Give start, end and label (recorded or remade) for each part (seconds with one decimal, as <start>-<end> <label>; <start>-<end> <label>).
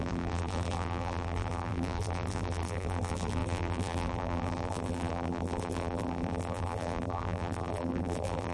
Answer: 0.0-8.5 remade